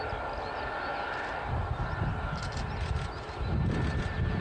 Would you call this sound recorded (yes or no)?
yes